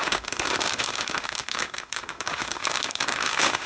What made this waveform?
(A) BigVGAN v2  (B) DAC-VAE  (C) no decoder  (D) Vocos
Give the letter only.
B